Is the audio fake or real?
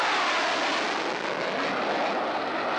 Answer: real